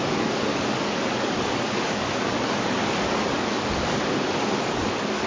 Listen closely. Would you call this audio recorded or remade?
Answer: remade